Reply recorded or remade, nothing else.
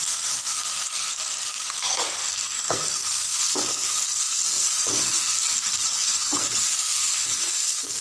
remade